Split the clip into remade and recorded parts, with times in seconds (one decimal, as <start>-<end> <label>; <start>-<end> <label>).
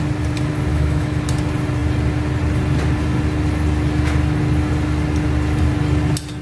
0.0-0.7 recorded; 0.7-1.2 remade; 1.2-6.4 recorded